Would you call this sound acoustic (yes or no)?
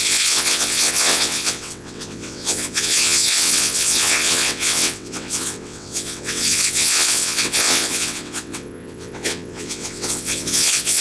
no